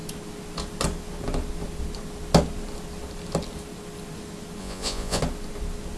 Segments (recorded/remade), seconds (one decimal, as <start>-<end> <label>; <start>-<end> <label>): 0.0-4.6 recorded; 4.6-5.2 remade; 5.2-6.0 recorded